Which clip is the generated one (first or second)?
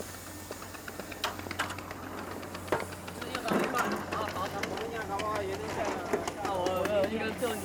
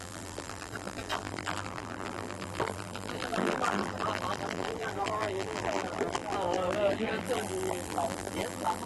second